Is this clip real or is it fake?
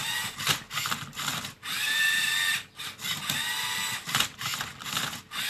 real